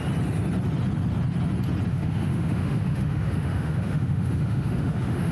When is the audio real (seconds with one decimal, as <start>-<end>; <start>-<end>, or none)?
0.0-1.9